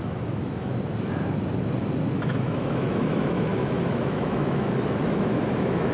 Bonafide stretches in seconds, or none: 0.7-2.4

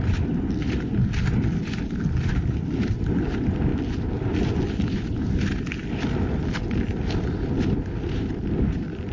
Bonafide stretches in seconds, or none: 0.0-9.1

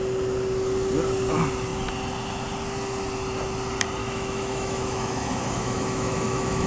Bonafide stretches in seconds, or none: 0.0-4.0